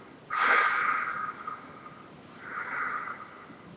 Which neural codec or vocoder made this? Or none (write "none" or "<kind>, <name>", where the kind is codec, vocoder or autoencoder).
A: none